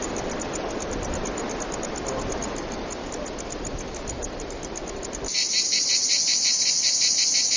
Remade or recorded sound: remade